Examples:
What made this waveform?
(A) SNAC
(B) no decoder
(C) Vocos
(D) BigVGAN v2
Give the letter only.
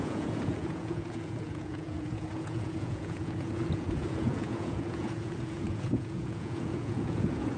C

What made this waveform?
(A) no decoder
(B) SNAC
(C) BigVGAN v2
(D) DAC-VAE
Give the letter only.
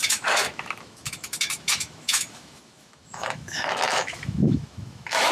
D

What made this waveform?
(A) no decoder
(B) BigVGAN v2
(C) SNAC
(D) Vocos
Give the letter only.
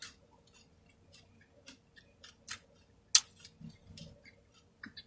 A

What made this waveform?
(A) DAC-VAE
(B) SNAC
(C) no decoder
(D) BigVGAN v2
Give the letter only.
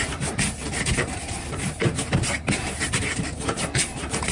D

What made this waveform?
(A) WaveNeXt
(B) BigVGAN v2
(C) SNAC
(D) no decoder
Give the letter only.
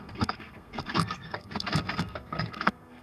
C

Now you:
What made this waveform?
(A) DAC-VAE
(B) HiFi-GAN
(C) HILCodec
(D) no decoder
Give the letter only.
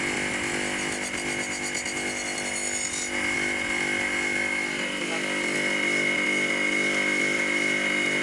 D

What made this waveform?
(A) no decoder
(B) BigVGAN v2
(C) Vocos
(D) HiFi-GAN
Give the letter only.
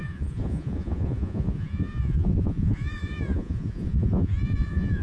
C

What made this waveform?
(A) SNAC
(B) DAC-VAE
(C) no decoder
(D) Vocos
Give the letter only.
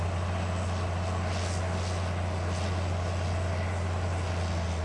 C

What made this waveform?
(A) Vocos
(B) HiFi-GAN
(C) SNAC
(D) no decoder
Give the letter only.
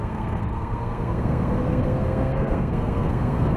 C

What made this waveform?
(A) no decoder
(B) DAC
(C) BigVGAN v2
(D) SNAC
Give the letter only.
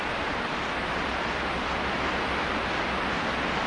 A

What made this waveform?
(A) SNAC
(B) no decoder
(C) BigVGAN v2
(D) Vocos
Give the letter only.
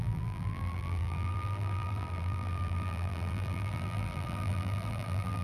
C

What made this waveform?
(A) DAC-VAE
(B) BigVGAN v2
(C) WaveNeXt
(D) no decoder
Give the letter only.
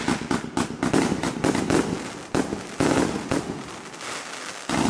D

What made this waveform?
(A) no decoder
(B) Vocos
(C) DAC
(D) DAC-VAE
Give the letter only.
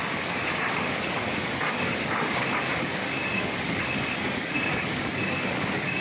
C